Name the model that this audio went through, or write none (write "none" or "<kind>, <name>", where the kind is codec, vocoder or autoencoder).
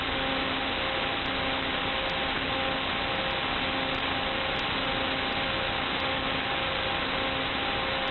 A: none